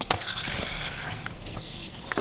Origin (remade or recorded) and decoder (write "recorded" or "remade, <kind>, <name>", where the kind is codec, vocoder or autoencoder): remade, codec, SNAC